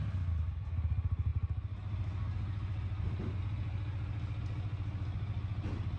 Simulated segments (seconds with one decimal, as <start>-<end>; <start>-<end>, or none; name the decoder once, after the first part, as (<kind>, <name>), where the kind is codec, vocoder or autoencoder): none